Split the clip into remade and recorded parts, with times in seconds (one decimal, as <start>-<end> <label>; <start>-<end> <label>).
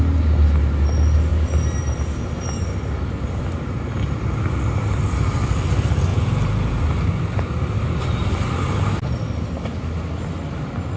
0.0-6.1 recorded; 6.1-6.8 remade; 6.8-11.0 recorded